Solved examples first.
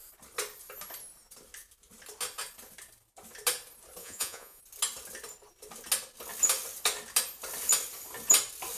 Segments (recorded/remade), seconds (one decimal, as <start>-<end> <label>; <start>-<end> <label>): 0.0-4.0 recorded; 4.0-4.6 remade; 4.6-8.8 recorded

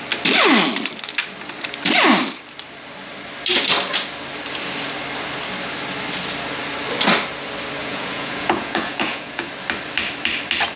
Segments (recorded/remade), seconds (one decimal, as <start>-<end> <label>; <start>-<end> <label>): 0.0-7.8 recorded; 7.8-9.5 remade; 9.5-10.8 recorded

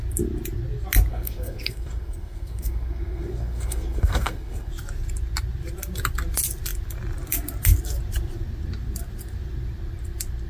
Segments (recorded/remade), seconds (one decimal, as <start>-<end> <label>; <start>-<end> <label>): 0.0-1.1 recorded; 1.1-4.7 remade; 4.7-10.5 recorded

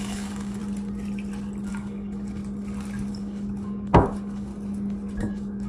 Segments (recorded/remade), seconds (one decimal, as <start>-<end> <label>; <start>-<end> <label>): 0.0-0.6 remade; 0.6-1.7 recorded; 1.7-2.4 remade; 2.4-3.1 recorded; 3.1-4.5 remade; 4.5-5.2 recorded; 5.2-5.7 remade

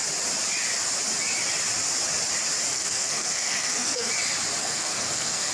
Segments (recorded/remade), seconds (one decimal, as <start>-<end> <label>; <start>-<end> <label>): 0.0-2.7 recorded; 2.7-4.1 remade; 4.1-4.6 recorded; 4.6-5.5 remade

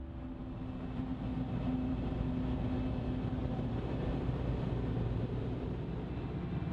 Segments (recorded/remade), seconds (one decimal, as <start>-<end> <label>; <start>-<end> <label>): 0.0-3.4 recorded; 3.4-5.8 remade; 5.8-6.7 recorded